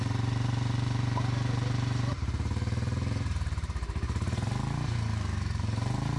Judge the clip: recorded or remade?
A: remade